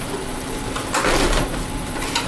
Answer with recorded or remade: remade